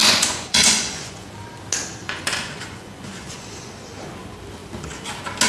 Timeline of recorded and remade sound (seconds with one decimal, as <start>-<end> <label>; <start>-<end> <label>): 0.0-1.3 remade; 1.3-2.0 recorded; 2.0-3.7 remade; 3.7-5.5 recorded